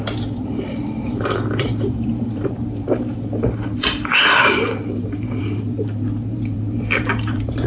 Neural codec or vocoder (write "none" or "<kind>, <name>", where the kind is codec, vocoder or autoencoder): vocoder, BigVGAN v2